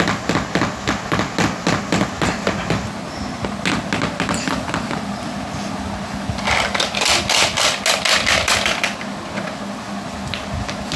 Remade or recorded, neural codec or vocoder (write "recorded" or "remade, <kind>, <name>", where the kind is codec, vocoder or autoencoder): recorded